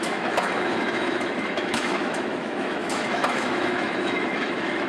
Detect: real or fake fake